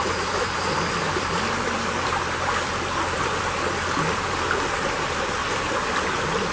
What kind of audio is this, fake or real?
real